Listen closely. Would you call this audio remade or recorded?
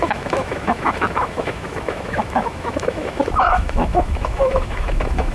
remade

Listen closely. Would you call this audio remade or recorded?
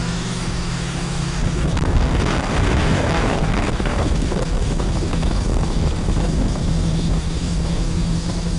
remade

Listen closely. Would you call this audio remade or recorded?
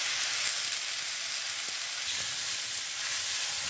recorded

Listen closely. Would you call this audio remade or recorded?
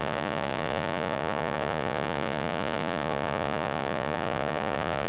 remade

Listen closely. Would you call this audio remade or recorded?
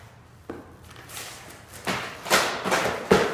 recorded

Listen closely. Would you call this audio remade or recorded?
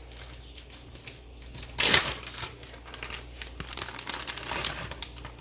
recorded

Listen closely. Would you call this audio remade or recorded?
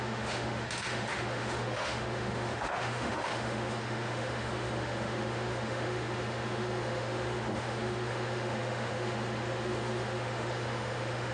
remade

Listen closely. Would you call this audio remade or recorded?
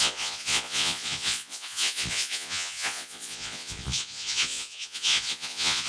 remade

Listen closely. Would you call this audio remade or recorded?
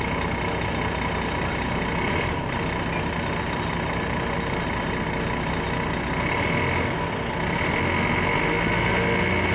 recorded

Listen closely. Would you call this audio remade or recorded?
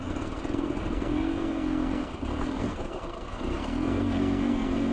remade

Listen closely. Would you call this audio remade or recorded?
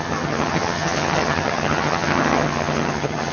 remade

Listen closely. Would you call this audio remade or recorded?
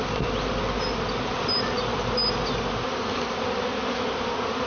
recorded